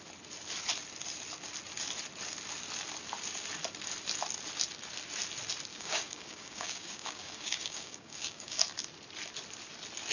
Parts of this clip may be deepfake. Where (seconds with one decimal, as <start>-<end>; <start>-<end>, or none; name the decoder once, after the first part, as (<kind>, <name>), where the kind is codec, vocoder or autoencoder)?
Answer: 5.7-8.6 (codec, DAC)